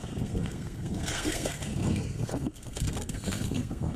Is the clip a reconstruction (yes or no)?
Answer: yes